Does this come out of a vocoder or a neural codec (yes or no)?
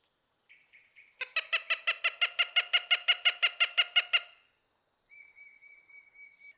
no